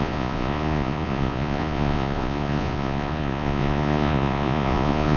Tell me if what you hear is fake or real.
fake